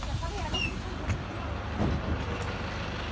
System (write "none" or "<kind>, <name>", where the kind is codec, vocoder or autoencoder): none